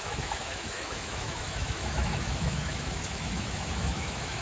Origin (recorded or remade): remade